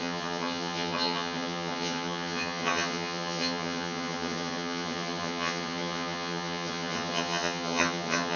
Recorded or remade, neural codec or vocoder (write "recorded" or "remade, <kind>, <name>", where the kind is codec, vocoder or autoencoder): remade, vocoder, HiFi-GAN